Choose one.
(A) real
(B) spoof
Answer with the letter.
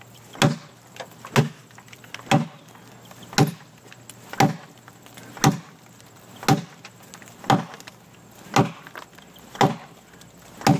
A